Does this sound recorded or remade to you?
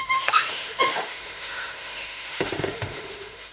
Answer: remade